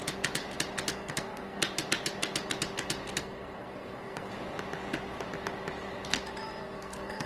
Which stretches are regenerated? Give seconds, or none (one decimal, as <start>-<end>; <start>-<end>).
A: 0.9-1.6; 3.2-4.3; 6.6-7.3

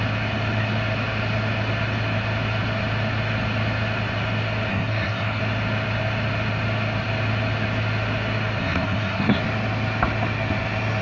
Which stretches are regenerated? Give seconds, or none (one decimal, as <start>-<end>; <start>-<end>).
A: 4.7-5.4; 8.6-9.4

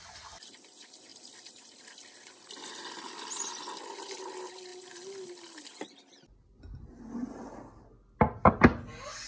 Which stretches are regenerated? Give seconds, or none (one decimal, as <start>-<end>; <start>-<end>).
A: none